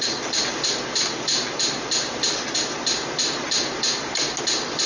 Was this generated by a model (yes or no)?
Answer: no